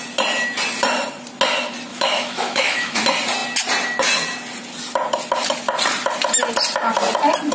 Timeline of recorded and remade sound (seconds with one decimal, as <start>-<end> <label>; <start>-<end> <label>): 0.0-1.9 recorded; 1.9-3.0 remade; 3.0-7.5 recorded

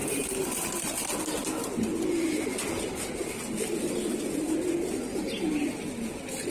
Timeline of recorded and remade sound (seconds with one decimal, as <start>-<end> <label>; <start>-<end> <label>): 0.0-6.5 recorded